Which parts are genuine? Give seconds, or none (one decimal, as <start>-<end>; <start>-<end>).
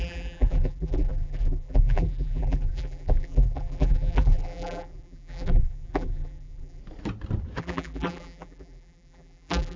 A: 6.8-7.6